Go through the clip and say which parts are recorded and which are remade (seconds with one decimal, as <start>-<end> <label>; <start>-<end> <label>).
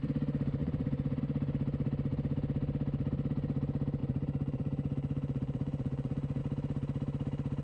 0.0-0.6 recorded; 0.6-1.2 remade; 1.2-4.0 recorded; 4.0-6.4 remade; 6.4-7.6 recorded